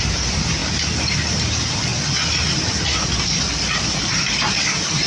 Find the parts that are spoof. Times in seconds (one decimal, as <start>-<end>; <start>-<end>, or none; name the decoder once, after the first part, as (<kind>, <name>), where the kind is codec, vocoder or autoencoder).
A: 0.0-0.6 (vocoder, BigVGAN v2); 1.1-1.9; 3.9-5.1